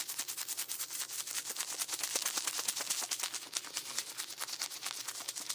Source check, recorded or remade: recorded